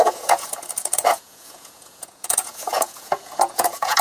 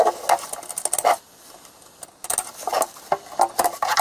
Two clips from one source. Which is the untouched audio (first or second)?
second